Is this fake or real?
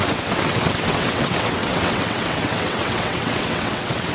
fake